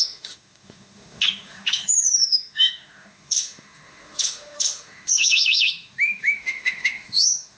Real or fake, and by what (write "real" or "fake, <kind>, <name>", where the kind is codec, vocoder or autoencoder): fake, autoencoder, DAC-VAE